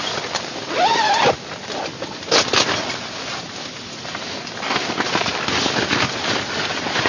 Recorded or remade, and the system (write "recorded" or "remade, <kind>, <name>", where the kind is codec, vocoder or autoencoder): recorded